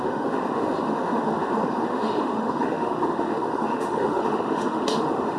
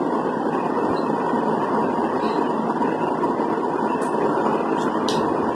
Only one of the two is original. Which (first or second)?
second